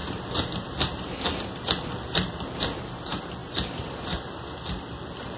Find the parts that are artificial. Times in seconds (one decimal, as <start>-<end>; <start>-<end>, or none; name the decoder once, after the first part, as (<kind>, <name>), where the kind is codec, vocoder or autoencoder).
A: 0.0-1.5 (vocoder, BigVGAN v2); 3.4-3.9